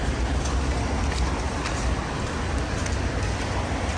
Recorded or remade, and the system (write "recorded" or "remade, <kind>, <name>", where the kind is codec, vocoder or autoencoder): recorded